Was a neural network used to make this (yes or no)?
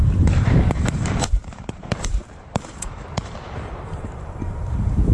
yes